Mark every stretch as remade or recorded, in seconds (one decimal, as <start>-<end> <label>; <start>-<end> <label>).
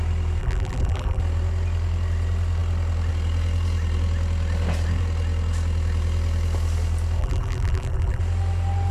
0.0-0.4 recorded; 0.4-1.2 remade; 1.2-7.2 recorded; 7.2-8.2 remade; 8.2-8.9 recorded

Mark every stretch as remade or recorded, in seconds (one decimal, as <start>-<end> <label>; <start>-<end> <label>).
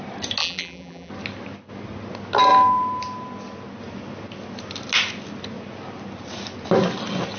0.0-0.4 recorded; 0.4-1.1 remade; 1.1-7.4 recorded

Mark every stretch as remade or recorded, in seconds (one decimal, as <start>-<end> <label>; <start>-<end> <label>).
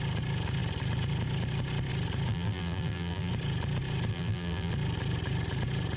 0.0-2.3 recorded; 2.3-3.3 remade; 3.3-4.1 recorded; 4.1-4.7 remade; 4.7-6.0 recorded